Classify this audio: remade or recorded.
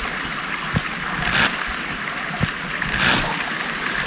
recorded